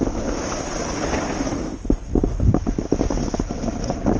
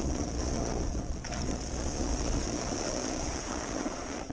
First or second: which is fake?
second